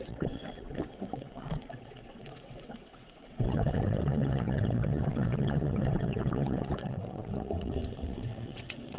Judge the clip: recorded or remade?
remade